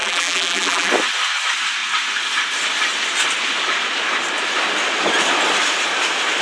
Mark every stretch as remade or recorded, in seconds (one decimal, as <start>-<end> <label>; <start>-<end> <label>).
0.0-0.9 remade; 0.9-6.4 recorded